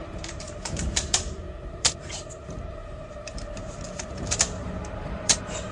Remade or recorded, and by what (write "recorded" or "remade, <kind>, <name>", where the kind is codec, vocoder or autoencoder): remade, vocoder, BigVGAN v2